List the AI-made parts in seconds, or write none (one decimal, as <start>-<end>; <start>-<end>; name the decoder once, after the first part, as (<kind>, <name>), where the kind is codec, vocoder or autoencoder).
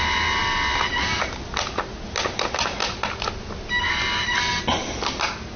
none